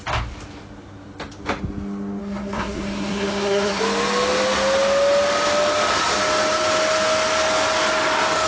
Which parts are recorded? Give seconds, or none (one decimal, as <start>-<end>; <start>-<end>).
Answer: 0.0-2.2; 3.8-8.5